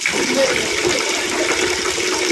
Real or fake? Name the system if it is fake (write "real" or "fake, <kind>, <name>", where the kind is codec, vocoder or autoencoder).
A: real